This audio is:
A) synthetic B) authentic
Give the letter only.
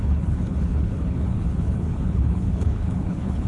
A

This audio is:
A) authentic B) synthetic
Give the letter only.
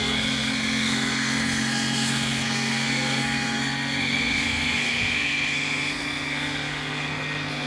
B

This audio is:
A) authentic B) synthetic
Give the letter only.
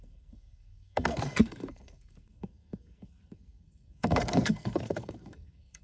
B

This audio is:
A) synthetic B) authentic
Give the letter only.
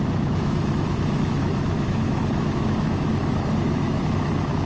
A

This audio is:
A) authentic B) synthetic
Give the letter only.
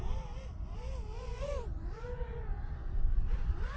A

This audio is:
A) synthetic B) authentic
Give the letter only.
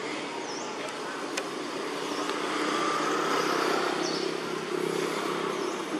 B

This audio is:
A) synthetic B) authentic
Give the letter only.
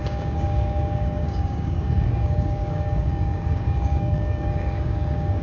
A